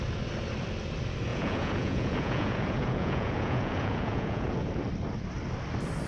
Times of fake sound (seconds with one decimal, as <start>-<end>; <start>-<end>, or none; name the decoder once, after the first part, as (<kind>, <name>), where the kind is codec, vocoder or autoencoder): 1.3-4.7 (vocoder, Vocos)